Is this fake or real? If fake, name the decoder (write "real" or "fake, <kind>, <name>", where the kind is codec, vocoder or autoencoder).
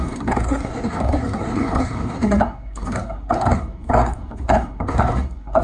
fake, codec, SNAC